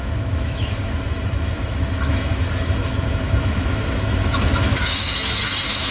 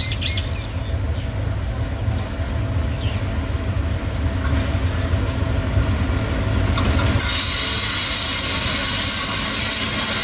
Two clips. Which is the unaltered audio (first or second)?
second